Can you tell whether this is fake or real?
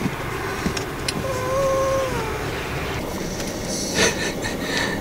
real